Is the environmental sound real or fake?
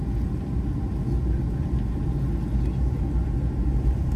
real